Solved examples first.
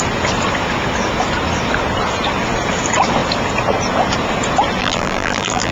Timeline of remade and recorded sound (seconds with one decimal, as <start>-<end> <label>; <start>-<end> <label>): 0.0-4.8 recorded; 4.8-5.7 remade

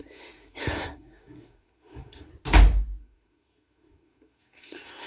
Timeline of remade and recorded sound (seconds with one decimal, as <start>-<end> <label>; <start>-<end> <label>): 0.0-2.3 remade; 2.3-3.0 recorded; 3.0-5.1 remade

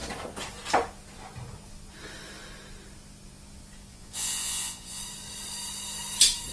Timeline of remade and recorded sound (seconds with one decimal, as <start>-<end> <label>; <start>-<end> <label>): 0.0-3.9 recorded; 3.9-5.0 remade; 5.0-6.5 recorded

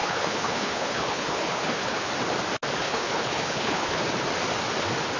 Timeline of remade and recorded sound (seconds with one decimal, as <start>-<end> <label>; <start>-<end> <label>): 0.0-2.1 remade; 2.1-2.8 recorded; 2.8-4.0 remade; 4.0-5.2 recorded

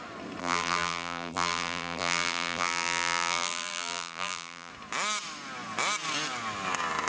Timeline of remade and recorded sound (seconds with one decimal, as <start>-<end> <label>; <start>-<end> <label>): 0.0-0.4 recorded; 0.4-4.7 remade; 4.7-7.1 recorded

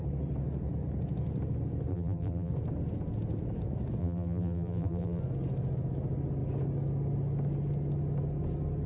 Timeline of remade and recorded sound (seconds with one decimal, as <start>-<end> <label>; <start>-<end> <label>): 0.0-1.9 recorded; 1.9-2.5 remade; 2.5-4.0 recorded; 4.0-5.2 remade; 5.2-8.9 recorded